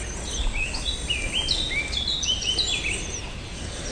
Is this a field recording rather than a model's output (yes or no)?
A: yes